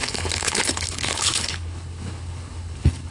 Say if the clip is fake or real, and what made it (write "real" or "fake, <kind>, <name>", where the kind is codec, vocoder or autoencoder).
fake, codec, HILCodec